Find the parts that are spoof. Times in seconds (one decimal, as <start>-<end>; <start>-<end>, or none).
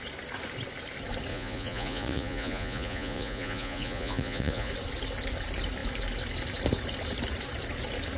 1.3-4.7